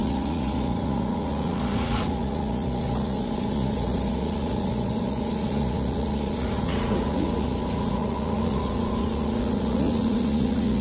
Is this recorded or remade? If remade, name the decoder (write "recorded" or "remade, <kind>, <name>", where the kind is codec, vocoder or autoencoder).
remade, vocoder, Vocos